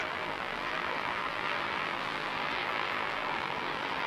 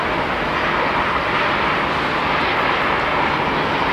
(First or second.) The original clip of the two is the second